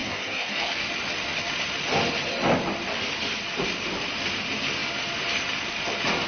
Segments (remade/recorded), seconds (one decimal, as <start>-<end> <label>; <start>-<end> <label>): 0.0-0.9 remade; 0.9-6.3 recorded